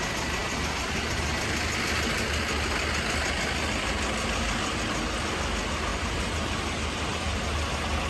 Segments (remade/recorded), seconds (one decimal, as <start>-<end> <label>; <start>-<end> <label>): 0.0-5.9 recorded; 5.9-7.5 remade; 7.5-8.1 recorded